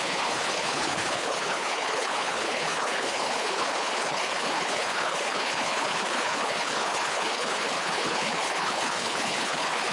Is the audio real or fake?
fake